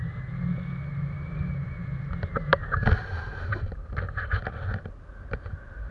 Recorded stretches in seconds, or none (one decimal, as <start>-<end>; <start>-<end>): 0.0-2.5; 4.4-5.9